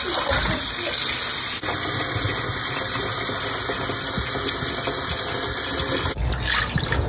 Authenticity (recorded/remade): recorded